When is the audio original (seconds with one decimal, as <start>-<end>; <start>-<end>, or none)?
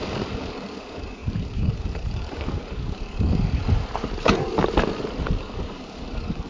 3.6-5.4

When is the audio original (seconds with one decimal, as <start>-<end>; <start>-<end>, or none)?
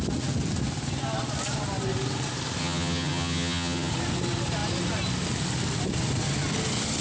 0.0-2.6; 3.9-7.0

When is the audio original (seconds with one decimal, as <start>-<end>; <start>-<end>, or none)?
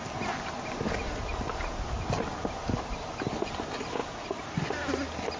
0.0-5.4